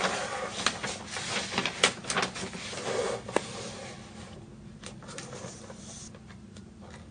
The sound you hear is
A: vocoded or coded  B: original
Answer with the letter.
B